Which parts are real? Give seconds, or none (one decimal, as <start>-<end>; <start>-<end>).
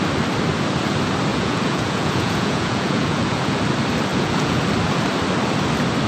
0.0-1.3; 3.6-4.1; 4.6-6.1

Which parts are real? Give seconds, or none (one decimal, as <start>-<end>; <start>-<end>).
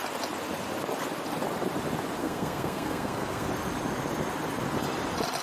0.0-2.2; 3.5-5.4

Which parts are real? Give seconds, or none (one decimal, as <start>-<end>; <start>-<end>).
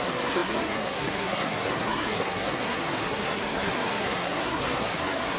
none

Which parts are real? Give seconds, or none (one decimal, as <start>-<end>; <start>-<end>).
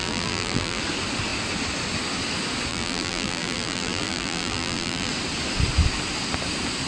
0.8-2.7; 5.1-6.9